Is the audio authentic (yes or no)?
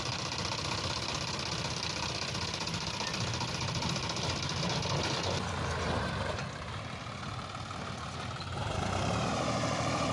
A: no